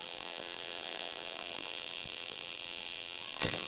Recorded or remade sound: remade